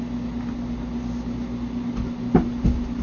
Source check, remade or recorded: recorded